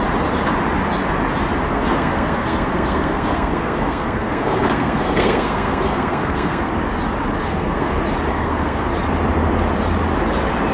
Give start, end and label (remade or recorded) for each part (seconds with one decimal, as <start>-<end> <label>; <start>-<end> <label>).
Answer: 0.0-1.7 recorded; 1.7-6.7 remade; 6.7-7.4 recorded; 7.4-7.9 remade; 7.9-8.3 recorded; 8.3-8.9 remade; 8.9-10.7 recorded